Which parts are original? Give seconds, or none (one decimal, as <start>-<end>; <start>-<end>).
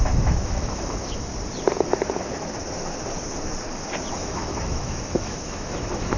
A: 1.3-4.1